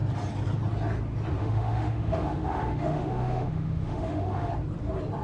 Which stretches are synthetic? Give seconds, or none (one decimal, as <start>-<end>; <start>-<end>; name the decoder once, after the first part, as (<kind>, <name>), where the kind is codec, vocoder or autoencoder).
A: 1.4-4.5 (autoencoder, DAC-VAE)

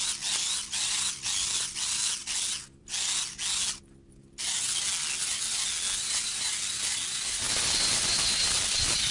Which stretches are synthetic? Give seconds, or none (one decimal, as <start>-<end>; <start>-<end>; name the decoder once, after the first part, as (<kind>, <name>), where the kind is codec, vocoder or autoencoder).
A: none

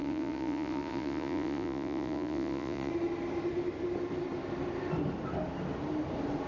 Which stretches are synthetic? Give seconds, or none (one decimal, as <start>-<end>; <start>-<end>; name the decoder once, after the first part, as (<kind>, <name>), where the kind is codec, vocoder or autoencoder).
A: 0.0-2.9 (vocoder, Vocos)

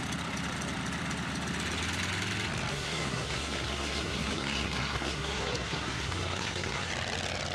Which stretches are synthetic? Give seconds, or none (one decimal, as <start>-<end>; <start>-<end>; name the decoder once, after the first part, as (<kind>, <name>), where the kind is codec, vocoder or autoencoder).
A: 2.7-6.9 (codec, SNAC)